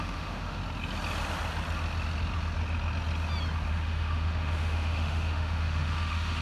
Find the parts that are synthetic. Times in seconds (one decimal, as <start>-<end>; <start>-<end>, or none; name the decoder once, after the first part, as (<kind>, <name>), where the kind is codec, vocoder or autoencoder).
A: 0.0-0.6 (autoencoder, DAC-VAE); 3.7-6.4